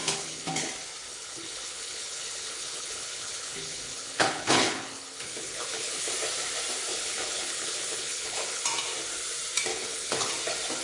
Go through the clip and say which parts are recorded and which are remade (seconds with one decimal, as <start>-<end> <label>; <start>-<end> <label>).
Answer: 0.0-0.7 remade; 0.7-1.1 recorded; 1.1-6.1 remade; 6.1-6.9 recorded; 6.9-8.6 remade; 8.6-9.7 recorded; 9.7-10.3 remade; 10.3-10.8 recorded